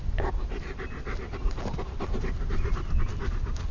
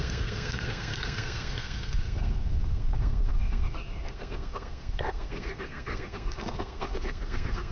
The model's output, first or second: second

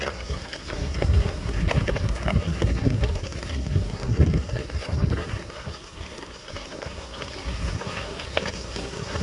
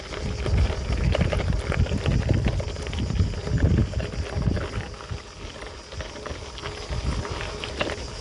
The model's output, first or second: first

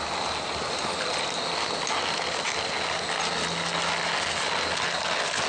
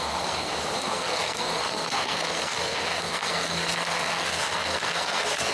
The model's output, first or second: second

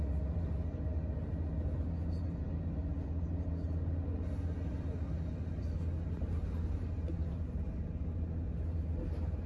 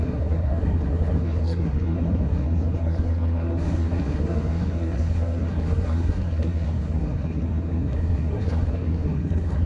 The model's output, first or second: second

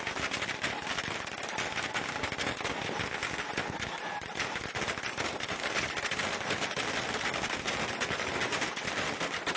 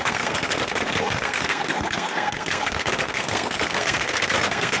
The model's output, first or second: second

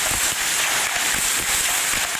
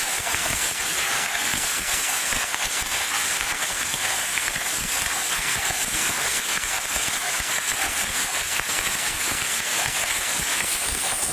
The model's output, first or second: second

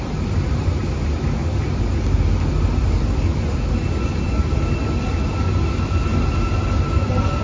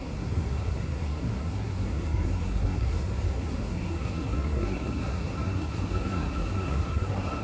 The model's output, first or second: second